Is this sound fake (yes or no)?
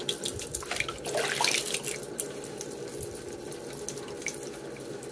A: no